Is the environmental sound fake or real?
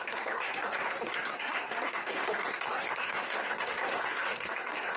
fake